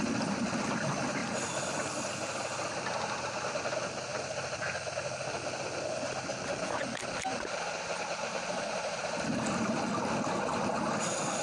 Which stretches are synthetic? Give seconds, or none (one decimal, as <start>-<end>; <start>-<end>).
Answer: 4.1-4.6; 7.3-9.9